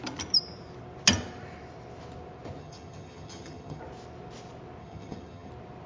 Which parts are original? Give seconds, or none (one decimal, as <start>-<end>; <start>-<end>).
0.0-2.6; 3.8-4.8; 5.5-5.9